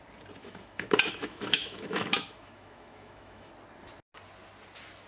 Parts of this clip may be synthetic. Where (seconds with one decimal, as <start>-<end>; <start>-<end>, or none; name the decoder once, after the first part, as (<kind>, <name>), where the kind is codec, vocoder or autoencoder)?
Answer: 0.4-3.5 (autoencoder, DAC-VAE)